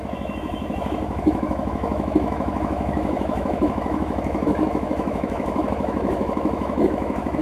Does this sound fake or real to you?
fake